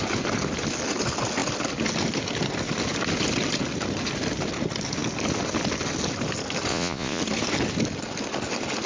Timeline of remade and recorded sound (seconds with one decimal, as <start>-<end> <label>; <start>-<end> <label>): 0.0-6.7 recorded; 6.7-7.2 remade; 7.2-8.9 recorded